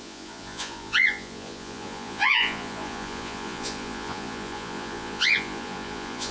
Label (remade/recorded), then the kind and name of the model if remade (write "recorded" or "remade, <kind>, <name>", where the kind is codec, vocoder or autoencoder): remade, vocoder, Vocos